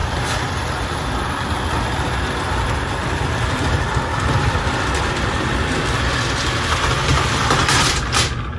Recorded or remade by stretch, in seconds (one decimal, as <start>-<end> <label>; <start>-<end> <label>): 0.0-5.1 remade; 5.1-7.1 recorded; 7.1-8.0 remade; 8.0-8.6 recorded